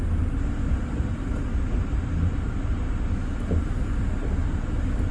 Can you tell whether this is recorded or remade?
recorded